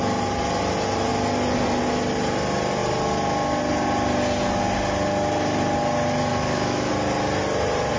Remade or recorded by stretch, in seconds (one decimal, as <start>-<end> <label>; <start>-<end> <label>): 0.0-6.3 recorded; 6.3-6.9 remade; 6.9-8.0 recorded